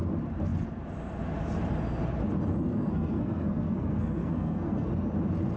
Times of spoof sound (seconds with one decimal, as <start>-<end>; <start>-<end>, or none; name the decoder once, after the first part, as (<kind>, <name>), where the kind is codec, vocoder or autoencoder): 2.7-4.9 (codec, SNAC)